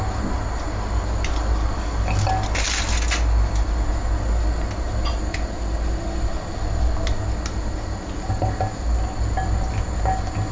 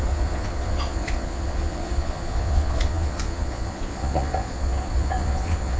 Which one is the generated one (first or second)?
second